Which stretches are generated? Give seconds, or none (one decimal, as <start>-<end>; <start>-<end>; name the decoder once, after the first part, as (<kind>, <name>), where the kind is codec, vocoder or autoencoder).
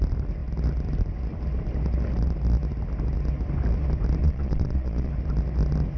4.2-5.1 (vocoder, Vocos)